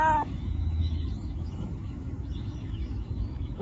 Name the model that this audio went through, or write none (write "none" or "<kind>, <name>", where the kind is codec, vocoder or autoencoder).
autoencoder, DAC-VAE